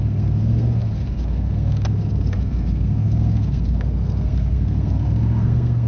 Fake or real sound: fake